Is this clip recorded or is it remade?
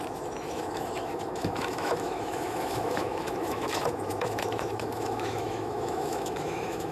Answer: remade